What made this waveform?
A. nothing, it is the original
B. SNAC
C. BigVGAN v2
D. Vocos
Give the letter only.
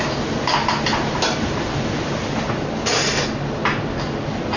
A